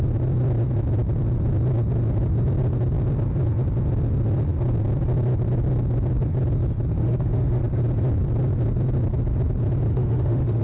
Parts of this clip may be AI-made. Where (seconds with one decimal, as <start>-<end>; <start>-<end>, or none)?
7.0-7.6; 9.9-10.6